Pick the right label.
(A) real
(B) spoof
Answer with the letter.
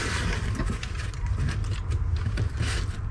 A